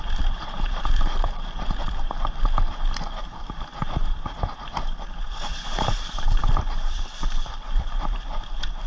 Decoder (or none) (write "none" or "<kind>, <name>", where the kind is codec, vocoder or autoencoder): vocoder, BigVGAN v2